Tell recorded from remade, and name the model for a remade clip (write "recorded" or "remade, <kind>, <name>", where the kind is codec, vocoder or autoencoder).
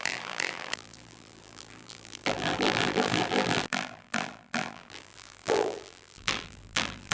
remade, vocoder, BigVGAN v2